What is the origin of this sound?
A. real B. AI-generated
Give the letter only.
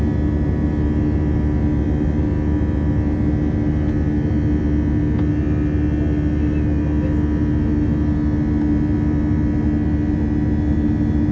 A